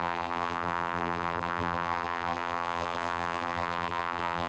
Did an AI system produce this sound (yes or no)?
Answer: yes